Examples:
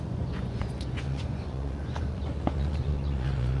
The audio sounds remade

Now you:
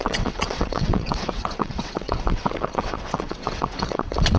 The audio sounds remade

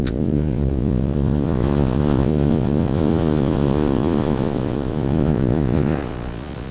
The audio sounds remade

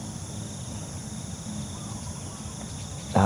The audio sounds recorded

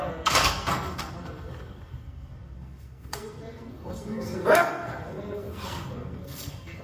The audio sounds remade